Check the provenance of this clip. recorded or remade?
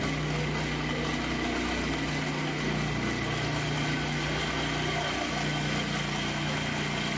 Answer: recorded